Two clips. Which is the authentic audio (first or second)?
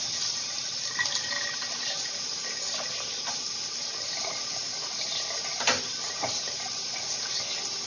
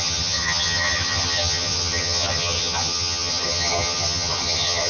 first